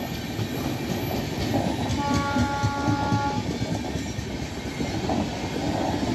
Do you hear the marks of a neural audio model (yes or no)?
no